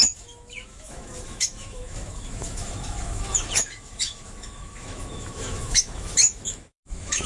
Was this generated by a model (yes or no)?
yes